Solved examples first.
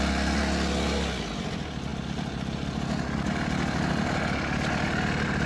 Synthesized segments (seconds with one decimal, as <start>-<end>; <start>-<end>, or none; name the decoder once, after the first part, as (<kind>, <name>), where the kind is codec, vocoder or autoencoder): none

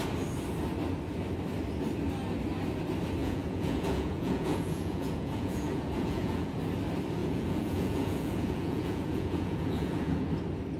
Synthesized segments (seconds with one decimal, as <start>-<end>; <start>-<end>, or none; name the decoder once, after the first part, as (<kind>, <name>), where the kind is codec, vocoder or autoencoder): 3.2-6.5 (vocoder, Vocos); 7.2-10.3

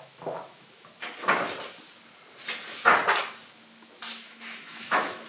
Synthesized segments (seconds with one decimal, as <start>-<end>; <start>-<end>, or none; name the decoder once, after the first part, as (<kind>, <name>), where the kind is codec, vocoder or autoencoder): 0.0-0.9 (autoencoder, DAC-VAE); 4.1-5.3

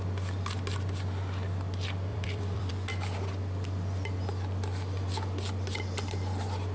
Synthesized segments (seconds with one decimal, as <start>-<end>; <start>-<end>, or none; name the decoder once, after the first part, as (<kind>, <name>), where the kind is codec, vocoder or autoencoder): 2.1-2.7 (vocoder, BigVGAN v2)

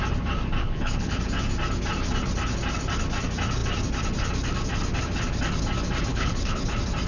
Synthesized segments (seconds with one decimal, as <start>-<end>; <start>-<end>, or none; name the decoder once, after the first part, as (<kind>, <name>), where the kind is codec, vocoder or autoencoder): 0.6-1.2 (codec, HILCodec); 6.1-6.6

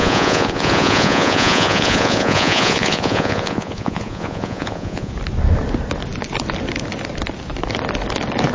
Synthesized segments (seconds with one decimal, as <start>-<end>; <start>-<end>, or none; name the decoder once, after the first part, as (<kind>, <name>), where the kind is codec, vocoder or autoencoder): 0.0-5.1 (vocoder, Vocos)

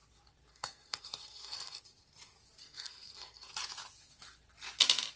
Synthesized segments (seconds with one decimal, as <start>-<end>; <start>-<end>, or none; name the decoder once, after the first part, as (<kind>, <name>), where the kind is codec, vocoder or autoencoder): 0.5-1.8 (codec, SNAC); 2.6-3.5